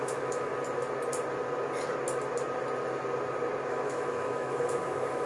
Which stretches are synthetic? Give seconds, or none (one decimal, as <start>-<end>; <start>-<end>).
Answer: 0.0-0.5; 3.7-5.3